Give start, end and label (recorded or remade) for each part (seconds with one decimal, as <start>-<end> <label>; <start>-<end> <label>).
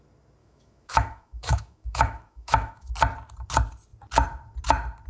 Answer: 0.0-0.4 recorded; 0.4-2.9 remade; 2.9-5.1 recorded